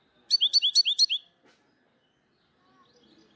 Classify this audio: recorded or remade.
recorded